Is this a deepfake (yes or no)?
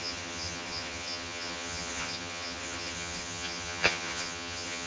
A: yes